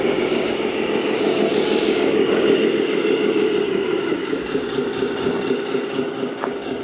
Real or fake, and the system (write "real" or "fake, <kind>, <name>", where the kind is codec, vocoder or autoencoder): fake, codec, DAC